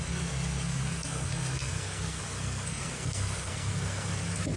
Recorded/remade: remade